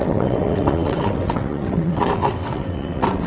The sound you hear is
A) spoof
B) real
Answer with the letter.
A